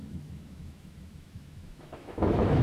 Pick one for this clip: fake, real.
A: fake